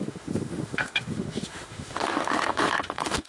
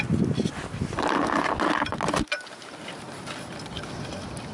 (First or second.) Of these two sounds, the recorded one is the second